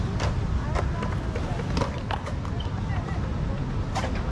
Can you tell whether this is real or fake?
real